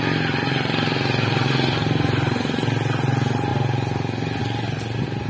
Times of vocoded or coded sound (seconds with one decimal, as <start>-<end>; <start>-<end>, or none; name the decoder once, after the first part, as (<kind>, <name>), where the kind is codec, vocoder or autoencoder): none